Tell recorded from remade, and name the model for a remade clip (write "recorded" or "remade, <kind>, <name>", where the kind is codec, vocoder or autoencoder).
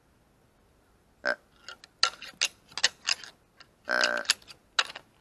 recorded